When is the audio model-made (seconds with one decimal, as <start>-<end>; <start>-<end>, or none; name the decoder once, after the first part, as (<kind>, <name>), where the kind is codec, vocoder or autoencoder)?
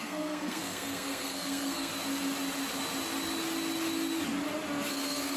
0.0-1.9 (codec, SNAC); 4.9-5.4